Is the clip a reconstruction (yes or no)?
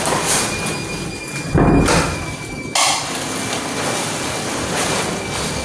no